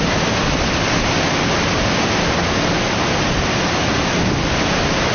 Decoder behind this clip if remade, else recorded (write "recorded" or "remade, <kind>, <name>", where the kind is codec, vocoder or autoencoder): recorded